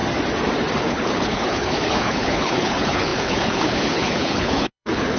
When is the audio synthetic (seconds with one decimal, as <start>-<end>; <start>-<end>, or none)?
0.8-5.2